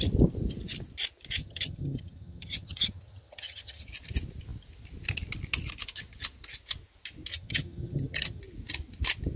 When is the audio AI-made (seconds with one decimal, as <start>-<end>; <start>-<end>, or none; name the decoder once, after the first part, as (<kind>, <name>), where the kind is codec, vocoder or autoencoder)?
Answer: 1.4-3.9 (vocoder, HiFi-GAN); 7.3-8.4